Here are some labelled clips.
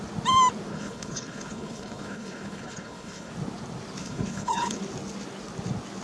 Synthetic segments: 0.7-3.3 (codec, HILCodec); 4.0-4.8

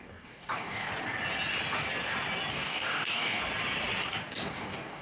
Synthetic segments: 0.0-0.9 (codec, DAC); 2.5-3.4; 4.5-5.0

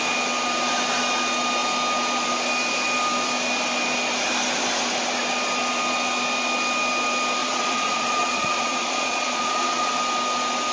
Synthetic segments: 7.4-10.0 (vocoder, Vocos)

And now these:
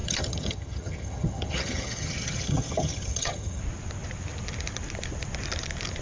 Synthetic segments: 0.0-3.6 (vocoder, HiFi-GAN)

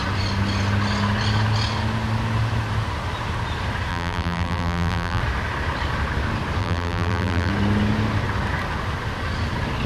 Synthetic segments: 3.9-5.2 (vocoder, BigVGAN v2); 6.6-7.5

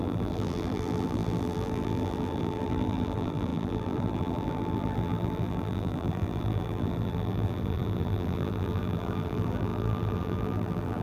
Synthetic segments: 0.0-11.0 (vocoder, BigVGAN v2)

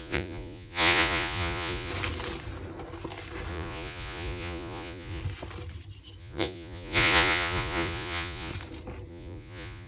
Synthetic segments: 0.0-1.9 (vocoder, Vocos); 3.5-5.2; 6.2-8.5; 9.1-9.9